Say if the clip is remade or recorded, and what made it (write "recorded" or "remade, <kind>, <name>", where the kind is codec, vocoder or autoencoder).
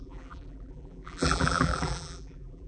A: remade, vocoder, BigVGAN v2